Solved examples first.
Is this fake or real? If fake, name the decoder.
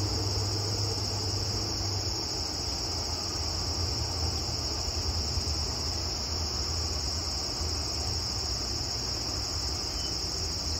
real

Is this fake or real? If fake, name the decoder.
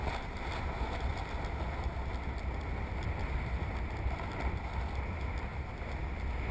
real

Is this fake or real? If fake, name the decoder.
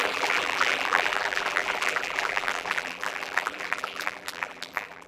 fake, vocoder, BigVGAN v2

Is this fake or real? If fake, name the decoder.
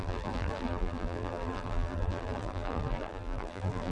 fake, vocoder, BigVGAN v2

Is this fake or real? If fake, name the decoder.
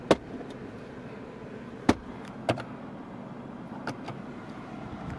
real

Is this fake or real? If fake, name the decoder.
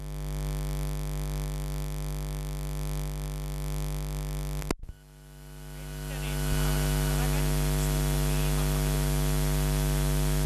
real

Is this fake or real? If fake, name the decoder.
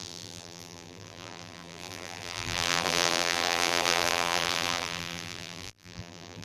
fake, vocoder, BigVGAN v2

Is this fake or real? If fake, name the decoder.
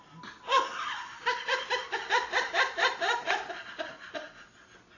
fake, vocoder, BigVGAN v2